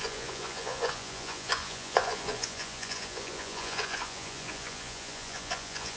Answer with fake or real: fake